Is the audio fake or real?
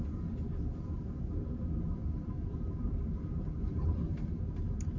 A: real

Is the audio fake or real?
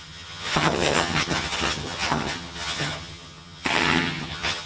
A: fake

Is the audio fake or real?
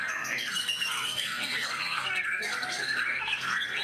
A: fake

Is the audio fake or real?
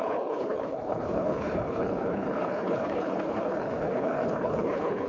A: fake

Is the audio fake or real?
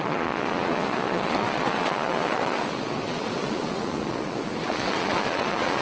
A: fake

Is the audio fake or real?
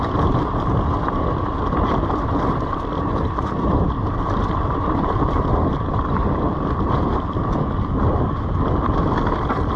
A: real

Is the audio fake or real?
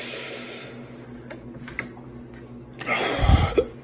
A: real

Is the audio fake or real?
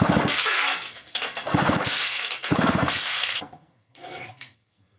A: fake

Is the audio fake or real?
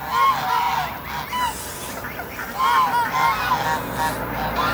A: real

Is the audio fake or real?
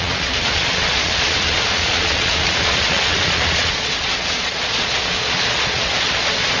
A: fake